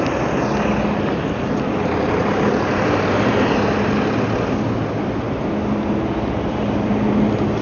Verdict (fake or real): real